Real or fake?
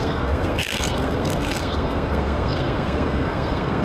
fake